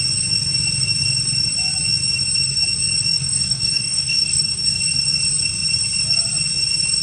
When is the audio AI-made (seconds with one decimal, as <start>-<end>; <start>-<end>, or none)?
3.1-4.8